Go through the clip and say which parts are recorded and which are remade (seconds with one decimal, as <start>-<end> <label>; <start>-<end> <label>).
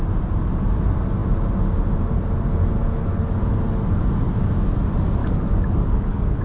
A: 0.0-5.2 recorded; 5.2-6.4 remade